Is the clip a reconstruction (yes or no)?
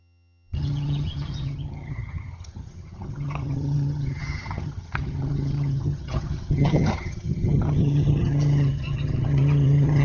yes